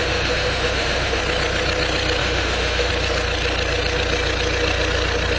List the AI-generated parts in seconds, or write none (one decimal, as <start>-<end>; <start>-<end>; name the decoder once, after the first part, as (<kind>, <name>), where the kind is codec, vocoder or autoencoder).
0.0-1.2 (autoencoder, DAC-VAE); 2.2-2.9